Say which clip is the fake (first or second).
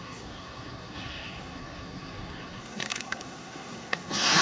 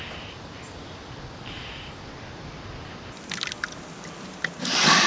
first